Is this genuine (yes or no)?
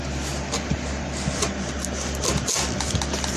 yes